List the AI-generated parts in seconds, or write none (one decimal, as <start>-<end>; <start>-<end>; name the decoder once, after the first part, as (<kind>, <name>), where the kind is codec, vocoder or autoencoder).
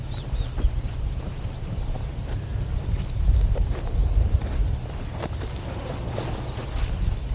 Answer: 0.0-1.9 (vocoder, BigVGAN v2); 4.0-4.6